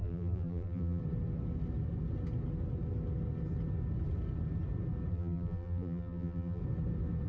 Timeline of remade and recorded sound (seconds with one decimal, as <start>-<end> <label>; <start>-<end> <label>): 0.0-1.0 remade; 1.0-5.1 recorded; 5.1-6.6 remade; 6.6-7.3 recorded